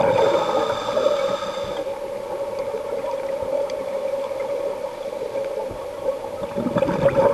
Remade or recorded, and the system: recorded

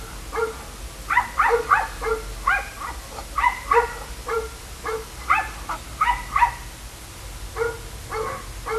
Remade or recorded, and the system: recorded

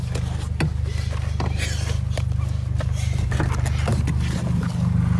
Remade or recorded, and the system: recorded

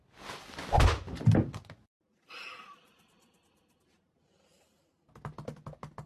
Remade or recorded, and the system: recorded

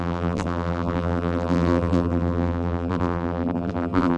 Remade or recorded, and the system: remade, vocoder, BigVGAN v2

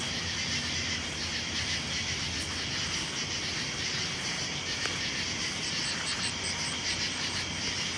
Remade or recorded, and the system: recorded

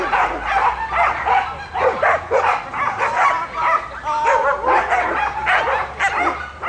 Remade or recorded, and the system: recorded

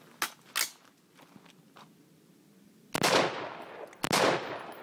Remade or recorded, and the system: recorded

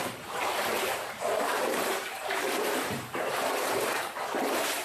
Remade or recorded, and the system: remade, vocoder, BigVGAN v2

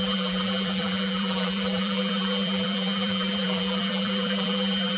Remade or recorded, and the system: remade, vocoder, BigVGAN v2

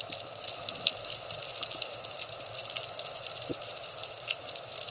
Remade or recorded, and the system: recorded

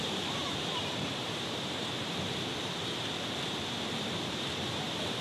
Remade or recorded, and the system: remade, vocoder, BigVGAN v2